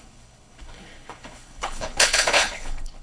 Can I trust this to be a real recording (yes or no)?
no